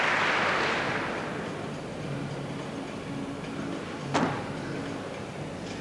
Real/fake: real